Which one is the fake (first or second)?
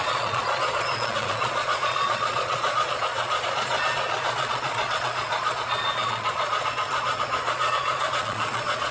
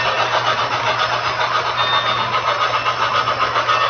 first